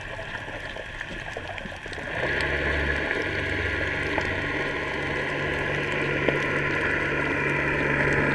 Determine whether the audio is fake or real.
real